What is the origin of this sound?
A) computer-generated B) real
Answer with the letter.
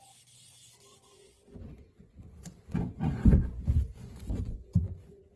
A